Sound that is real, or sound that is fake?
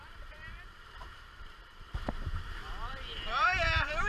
fake